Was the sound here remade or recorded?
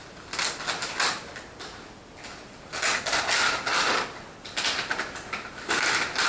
recorded